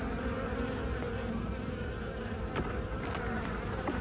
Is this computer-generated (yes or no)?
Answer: no